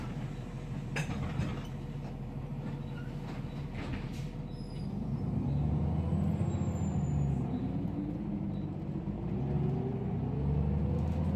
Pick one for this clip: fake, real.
real